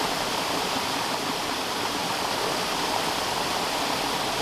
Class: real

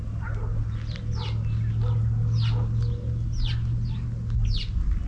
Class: real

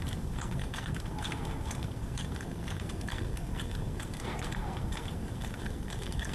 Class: fake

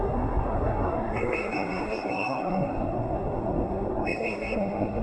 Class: fake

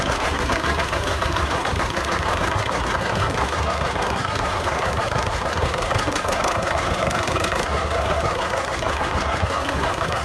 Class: fake